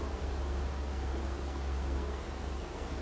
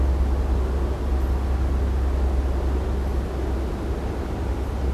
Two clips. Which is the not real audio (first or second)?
first